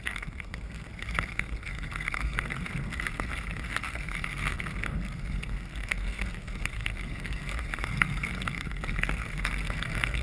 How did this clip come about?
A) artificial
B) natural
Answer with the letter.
A